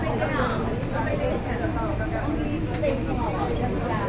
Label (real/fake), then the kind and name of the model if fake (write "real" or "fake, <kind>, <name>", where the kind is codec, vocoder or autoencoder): real